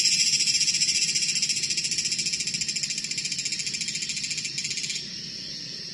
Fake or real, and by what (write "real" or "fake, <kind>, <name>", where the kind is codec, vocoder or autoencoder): real